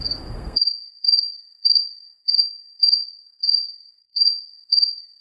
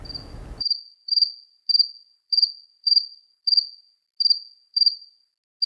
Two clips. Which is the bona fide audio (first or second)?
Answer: second